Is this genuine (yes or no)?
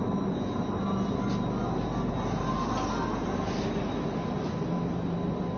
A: yes